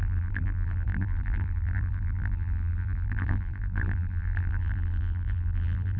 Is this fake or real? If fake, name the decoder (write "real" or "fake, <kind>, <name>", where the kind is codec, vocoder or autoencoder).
fake, vocoder, BigVGAN v2